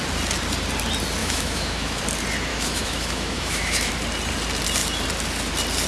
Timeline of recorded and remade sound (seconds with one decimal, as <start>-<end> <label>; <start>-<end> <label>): 0.0-1.2 recorded; 1.2-2.0 remade; 2.0-2.5 recorded; 2.5-3.9 remade; 3.9-5.9 recorded